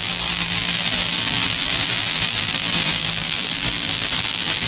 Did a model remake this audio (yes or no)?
yes